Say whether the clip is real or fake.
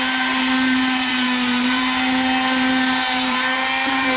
fake